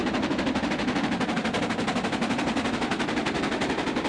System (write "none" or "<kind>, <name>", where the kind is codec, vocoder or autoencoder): none